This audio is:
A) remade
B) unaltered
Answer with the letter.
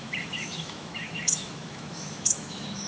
A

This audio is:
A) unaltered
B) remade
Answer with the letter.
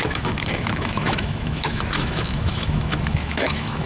B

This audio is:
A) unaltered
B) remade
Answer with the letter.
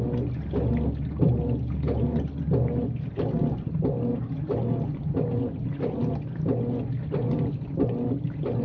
A